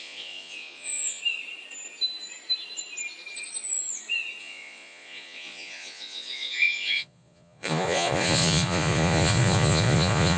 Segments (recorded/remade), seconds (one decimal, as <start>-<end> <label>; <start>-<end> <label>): 0.0-1.2 remade; 1.2-4.4 recorded; 4.4-10.4 remade

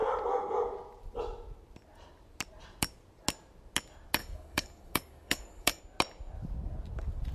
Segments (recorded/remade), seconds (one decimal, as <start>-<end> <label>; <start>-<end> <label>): 0.0-4.2 recorded; 4.2-5.8 remade; 5.8-7.3 recorded

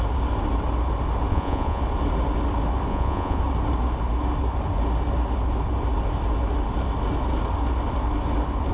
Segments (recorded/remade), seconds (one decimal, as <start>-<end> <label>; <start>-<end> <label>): 0.0-1.3 recorded; 1.3-1.8 remade; 1.8-2.9 recorded; 2.9-3.4 remade; 3.4-8.7 recorded

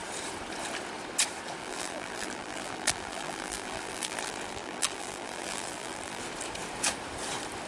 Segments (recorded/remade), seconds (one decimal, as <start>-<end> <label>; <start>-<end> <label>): 0.0-1.6 recorded; 1.6-6.2 remade; 6.2-7.7 recorded

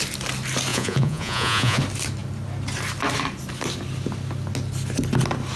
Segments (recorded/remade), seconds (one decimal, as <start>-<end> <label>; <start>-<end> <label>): 0.0-0.7 recorded; 0.7-1.8 remade; 1.8-5.6 recorded

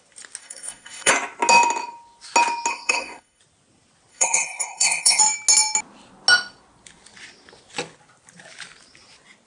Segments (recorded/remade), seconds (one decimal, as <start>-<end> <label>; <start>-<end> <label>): 0.0-0.4 recorded; 0.4-1.1 remade; 1.1-2.7 recorded; 2.7-3.4 remade; 3.4-4.1 recorded; 4.1-5.2 remade; 5.2-9.5 recorded

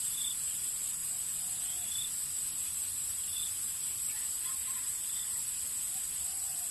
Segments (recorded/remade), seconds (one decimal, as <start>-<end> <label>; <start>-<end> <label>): 0.0-6.7 remade

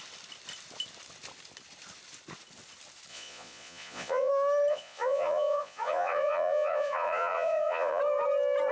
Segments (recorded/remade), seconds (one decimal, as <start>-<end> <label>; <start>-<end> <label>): 0.0-3.1 recorded; 3.1-4.3 remade; 4.3-4.7 recorded; 4.7-8.0 remade; 8.0-8.7 recorded